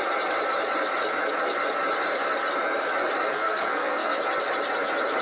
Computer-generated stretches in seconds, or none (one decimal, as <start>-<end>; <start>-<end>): 3.3-4.2